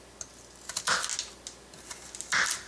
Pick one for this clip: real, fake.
real